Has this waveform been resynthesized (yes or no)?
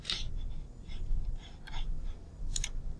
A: yes